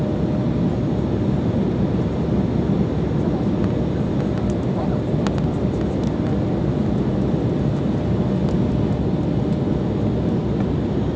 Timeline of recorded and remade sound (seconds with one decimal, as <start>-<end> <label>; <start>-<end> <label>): 0.0-11.2 recorded